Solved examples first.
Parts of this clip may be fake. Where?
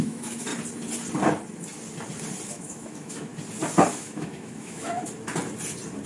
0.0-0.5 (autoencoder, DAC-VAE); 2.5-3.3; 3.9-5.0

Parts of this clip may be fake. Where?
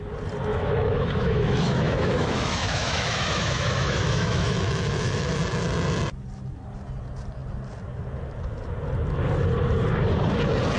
0.5-5.4 (autoencoder, DAC-VAE)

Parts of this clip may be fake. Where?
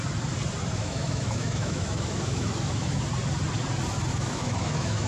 0.7-3.0 (autoencoder, DAC-VAE); 4.1-5.1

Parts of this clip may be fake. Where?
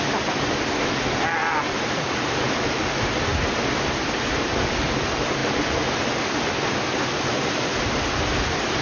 none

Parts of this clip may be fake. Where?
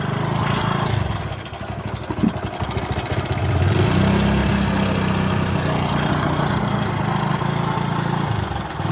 none